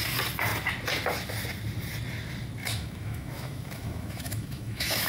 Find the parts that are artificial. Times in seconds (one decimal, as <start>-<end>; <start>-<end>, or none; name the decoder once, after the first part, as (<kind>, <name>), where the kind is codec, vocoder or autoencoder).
2.6-5.1 (autoencoder, DAC-VAE)